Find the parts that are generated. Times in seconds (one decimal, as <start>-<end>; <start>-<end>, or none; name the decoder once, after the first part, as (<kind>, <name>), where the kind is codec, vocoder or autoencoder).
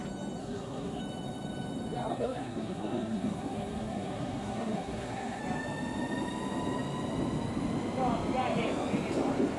0.4-1.0 (codec, SNAC); 2.1-5.4